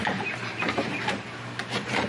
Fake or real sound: fake